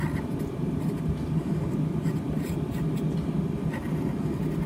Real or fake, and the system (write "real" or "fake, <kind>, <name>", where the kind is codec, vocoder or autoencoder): real